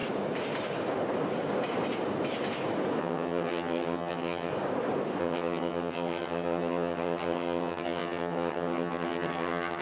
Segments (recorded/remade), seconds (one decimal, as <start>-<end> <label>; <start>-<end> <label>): 0.0-3.0 recorded; 3.0-4.5 remade; 4.5-5.2 recorded; 5.2-9.8 remade